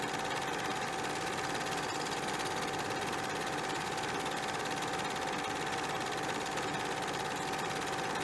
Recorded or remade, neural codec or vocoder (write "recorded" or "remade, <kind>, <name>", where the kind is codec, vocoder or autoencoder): recorded